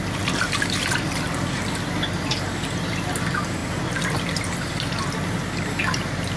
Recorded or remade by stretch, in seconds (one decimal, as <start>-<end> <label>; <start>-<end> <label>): 0.0-6.4 recorded